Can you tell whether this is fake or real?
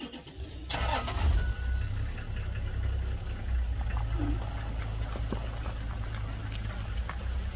real